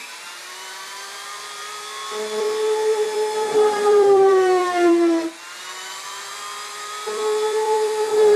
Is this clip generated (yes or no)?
yes